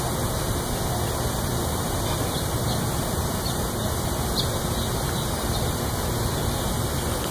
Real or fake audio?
real